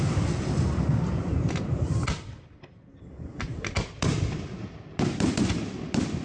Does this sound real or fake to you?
fake